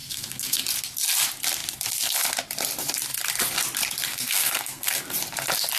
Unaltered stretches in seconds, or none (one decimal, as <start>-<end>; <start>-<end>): 0.6-4.1; 5.0-5.8

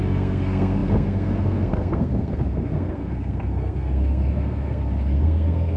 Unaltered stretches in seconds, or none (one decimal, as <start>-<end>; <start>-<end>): none

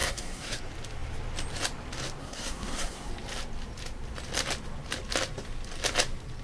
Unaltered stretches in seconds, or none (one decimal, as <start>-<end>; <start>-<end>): 0.6-2.2; 3.1-6.4

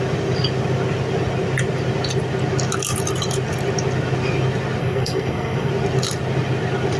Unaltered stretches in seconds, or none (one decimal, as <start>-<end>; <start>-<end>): 0.0-4.8; 5.7-7.0

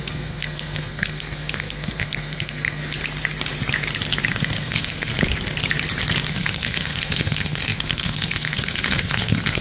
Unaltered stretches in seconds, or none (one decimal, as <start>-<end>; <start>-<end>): 2.8-4.3; 5.1-6.3

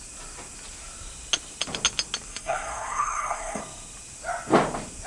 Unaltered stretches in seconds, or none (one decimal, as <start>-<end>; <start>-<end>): 0.0-2.3; 3.6-5.1